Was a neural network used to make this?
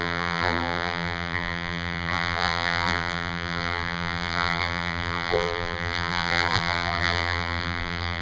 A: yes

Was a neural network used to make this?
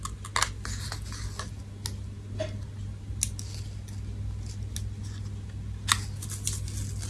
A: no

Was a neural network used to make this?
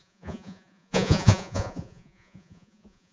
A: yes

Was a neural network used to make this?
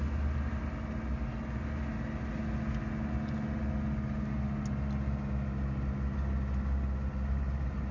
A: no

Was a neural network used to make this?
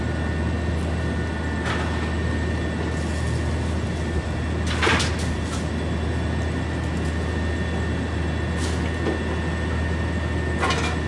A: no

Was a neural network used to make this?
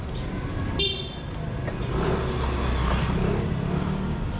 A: no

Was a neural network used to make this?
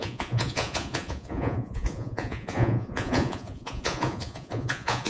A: yes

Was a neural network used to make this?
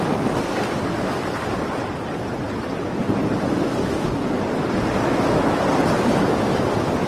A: no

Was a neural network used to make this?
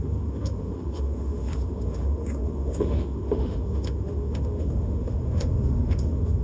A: yes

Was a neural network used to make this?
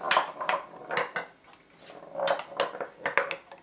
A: no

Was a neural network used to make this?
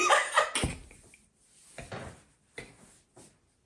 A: no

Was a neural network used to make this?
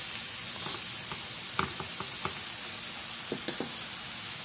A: no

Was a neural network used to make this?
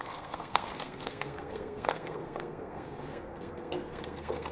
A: yes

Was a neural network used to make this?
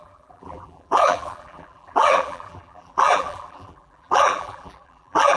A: yes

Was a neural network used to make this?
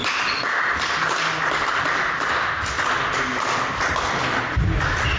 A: no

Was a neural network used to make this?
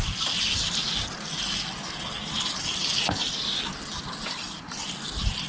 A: no